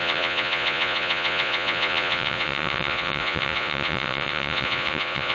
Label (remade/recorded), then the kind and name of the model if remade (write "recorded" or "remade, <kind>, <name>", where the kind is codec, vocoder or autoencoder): remade, vocoder, Vocos